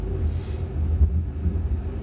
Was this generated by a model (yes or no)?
no